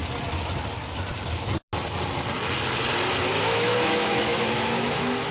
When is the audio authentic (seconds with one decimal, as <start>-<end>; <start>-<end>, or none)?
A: 0.0-3.2